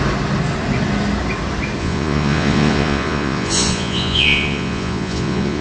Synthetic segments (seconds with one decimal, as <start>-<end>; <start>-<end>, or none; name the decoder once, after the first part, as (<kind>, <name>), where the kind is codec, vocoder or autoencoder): 1.8-5.6 (vocoder, Vocos)